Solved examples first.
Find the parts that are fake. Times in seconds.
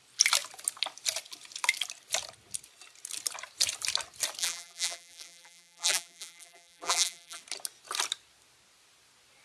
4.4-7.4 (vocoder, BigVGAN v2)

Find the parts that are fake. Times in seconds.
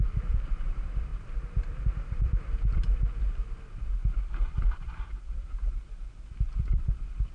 0.0-7.3 (vocoder, BigVGAN v2)